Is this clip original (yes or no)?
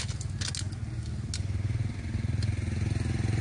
yes